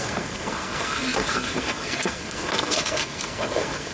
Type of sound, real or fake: fake